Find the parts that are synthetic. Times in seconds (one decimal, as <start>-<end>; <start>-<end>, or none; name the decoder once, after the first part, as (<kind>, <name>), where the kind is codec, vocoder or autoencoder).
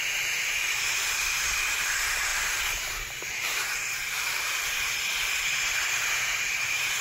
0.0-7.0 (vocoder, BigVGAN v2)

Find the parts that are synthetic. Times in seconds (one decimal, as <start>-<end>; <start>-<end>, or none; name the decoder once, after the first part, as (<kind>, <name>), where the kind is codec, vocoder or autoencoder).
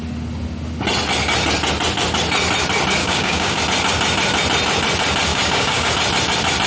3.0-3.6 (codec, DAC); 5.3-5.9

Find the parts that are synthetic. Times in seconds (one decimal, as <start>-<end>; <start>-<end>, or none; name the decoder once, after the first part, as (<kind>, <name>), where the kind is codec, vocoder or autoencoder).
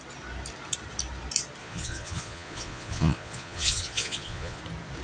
1.6-4.6 (vocoder, Vocos)